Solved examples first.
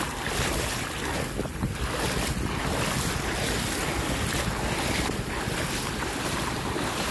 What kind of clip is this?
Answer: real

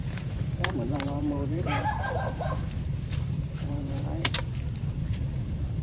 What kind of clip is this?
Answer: fake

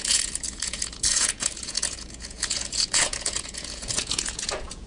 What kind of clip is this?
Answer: fake